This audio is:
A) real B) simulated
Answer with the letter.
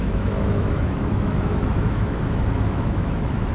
B